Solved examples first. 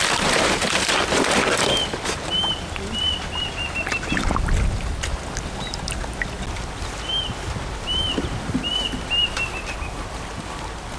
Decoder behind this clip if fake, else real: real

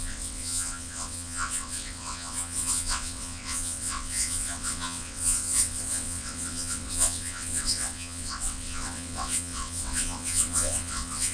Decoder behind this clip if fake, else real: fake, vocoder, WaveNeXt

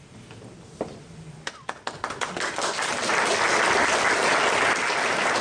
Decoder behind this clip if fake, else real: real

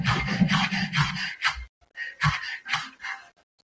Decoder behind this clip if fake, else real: real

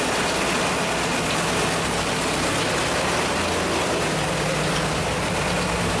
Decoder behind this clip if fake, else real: real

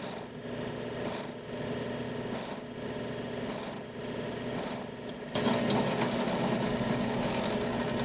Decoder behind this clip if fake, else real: real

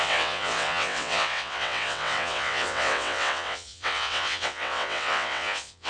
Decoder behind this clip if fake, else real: fake, vocoder, WaveNeXt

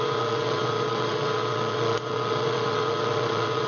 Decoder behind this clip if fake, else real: fake, vocoder, WaveNeXt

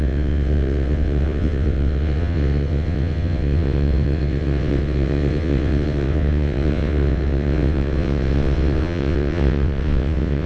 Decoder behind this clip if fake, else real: fake, vocoder, WaveNeXt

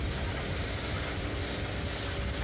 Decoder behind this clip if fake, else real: real